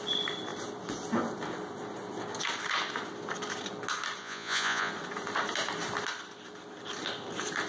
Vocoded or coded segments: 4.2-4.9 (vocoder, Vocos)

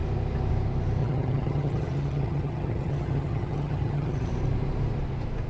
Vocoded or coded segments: 1.0-4.3 (vocoder, HiFi-GAN)

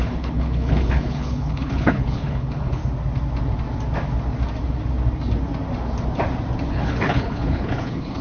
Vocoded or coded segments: 0.0-2.8 (codec, HILCodec); 6.7-8.2

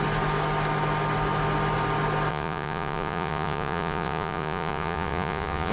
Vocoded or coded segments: 2.3-5.7 (vocoder, Vocos)